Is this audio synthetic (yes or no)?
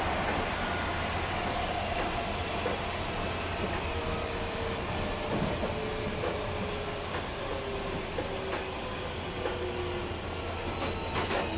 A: no